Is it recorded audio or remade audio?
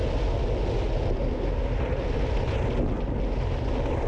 recorded